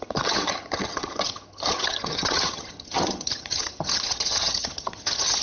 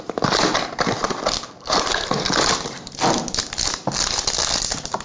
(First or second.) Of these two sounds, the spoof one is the first